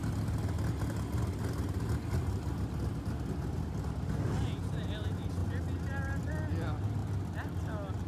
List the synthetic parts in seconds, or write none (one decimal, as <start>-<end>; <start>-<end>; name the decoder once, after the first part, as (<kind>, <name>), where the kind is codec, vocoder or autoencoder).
none